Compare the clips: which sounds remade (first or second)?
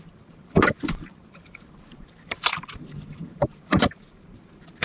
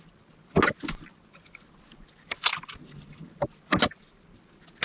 first